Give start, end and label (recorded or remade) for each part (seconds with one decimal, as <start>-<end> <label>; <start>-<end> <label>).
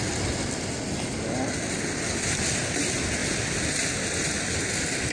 0.0-5.1 recorded